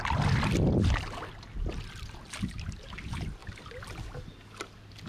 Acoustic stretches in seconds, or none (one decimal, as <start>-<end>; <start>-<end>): 0.0-5.1